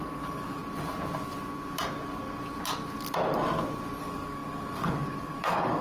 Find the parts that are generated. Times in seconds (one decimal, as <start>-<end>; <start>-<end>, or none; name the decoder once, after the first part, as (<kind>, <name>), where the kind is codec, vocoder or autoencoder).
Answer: 0.0-0.6 (codec, DAC); 4.0-5.8